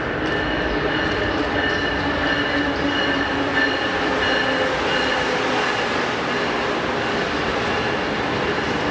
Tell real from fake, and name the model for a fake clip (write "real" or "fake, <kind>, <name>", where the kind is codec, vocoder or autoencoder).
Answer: real